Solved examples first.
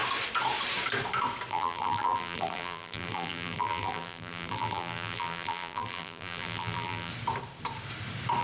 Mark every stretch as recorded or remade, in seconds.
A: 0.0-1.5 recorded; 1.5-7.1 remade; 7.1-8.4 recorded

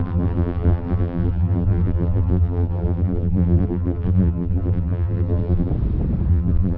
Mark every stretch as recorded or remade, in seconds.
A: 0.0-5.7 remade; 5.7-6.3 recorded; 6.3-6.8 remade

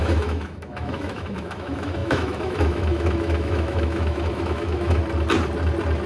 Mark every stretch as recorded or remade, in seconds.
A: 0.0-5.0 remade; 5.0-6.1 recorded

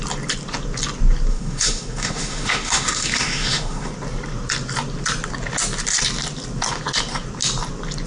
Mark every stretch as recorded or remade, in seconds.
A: 0.0-1.3 recorded; 1.3-3.9 remade; 3.9-8.1 recorded